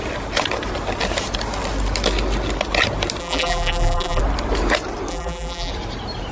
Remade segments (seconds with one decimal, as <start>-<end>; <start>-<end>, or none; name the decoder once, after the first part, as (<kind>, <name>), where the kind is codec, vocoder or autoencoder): 3.2-4.2 (vocoder, BigVGAN v2); 5.1-5.7